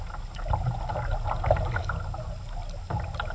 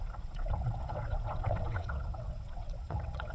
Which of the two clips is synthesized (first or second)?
second